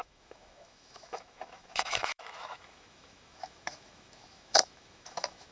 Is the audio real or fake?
fake